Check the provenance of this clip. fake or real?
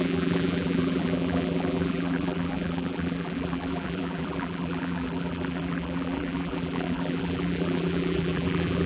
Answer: fake